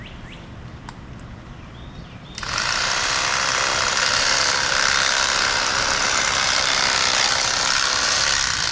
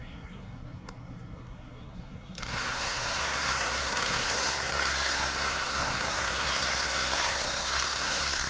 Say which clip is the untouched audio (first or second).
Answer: first